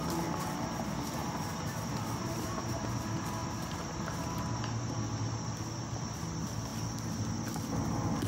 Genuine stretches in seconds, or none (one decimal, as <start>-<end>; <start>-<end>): 0.0-1.2; 3.0-3.4; 4.9-8.3